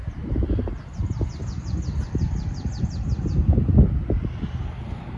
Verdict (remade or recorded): recorded